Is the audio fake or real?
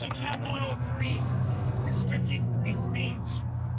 fake